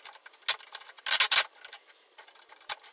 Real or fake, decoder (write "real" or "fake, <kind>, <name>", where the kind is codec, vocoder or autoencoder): real